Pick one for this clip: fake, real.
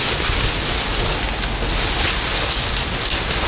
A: real